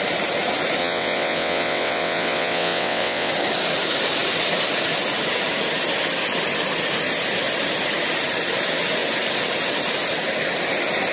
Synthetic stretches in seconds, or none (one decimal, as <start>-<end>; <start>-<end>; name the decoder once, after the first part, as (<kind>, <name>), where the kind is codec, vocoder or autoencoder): 0.8-3.3 (vocoder, WaveNeXt)